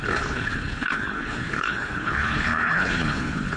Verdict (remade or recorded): remade